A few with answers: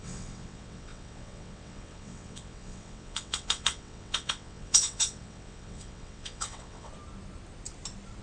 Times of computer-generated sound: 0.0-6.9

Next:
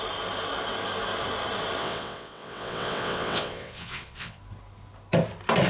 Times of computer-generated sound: 1.8-4.4

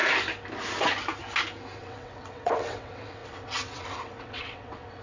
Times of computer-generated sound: 1.8-5.0

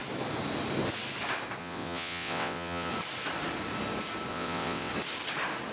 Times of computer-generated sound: 1.6-2.9; 4.3-4.9